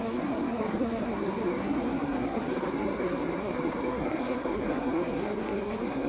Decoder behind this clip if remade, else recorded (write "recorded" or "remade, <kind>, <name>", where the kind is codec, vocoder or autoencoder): remade, codec, SNAC